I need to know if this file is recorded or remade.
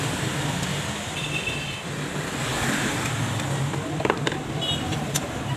remade